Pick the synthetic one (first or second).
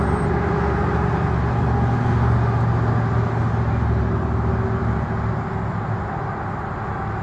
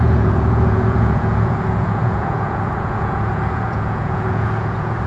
second